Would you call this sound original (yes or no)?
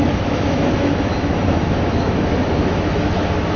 no